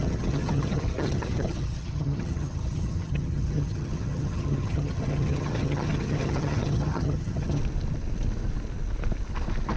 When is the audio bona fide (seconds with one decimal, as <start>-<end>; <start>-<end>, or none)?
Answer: 7.6-9.8